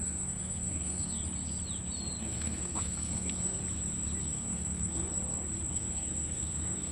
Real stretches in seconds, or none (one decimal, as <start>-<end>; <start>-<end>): 1.2-2.2; 3.6-4.2; 5.1-5.7